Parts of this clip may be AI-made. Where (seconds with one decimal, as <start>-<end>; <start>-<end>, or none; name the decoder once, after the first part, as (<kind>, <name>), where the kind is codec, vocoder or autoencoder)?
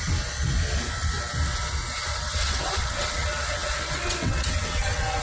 2.1-5.2 (vocoder, WaveNeXt)